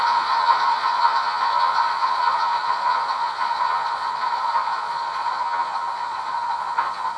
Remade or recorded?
remade